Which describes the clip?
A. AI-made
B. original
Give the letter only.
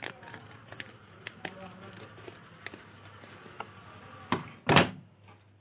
B